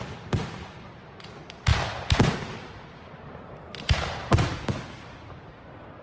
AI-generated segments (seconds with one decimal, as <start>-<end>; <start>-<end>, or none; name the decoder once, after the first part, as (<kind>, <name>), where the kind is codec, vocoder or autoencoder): none